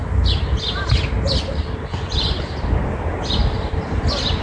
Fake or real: real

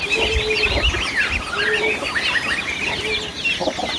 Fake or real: real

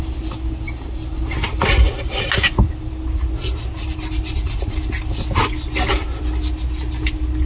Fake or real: real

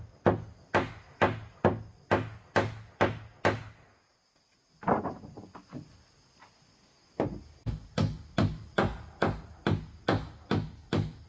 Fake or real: real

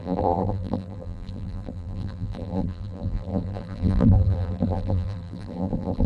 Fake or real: fake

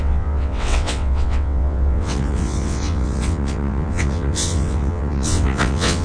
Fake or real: fake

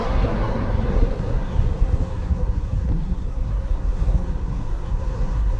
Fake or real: fake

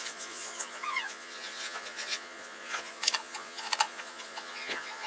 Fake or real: fake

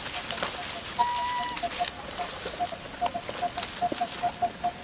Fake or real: real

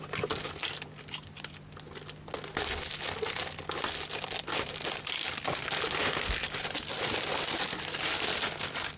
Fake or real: real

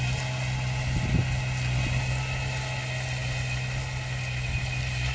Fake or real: real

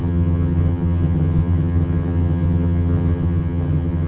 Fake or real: fake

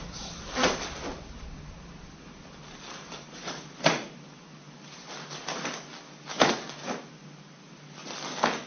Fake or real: real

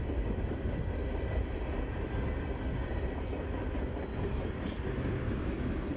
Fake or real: real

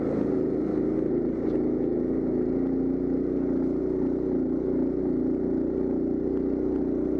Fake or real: real